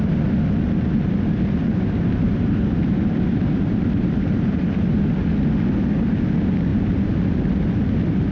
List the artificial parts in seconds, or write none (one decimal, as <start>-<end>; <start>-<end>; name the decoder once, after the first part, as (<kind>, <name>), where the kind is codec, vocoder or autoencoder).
1.6-5.0 (vocoder, BigVGAN v2); 6.7-7.2